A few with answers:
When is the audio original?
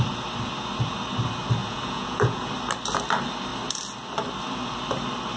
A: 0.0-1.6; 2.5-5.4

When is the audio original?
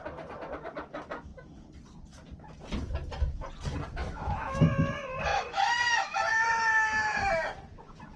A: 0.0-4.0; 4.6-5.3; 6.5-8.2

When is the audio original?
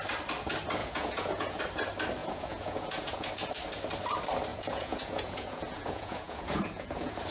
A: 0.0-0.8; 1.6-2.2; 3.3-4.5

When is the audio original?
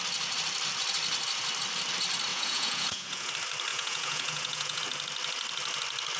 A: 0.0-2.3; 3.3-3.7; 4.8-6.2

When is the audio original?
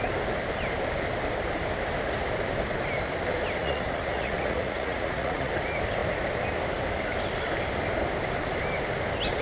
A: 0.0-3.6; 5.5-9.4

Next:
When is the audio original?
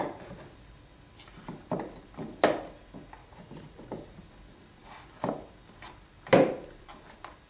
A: 0.0-3.2; 4.2-7.5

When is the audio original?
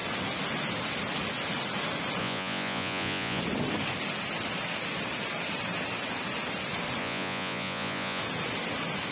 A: 0.0-2.2; 3.4-7.0; 8.2-9.1